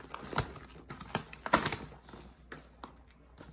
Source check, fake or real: real